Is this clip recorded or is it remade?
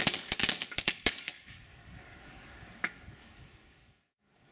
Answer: remade